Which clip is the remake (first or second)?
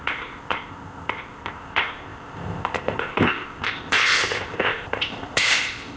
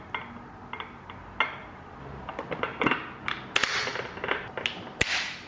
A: first